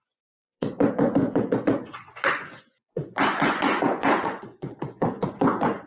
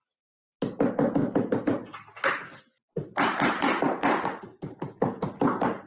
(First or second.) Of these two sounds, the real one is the second